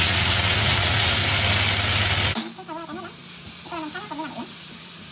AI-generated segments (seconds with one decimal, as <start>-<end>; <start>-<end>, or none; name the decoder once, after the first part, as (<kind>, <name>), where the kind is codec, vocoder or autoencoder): 0.0-1.2 (vocoder, Vocos); 4.3-5.1